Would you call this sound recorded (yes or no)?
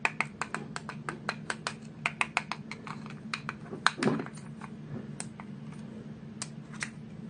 yes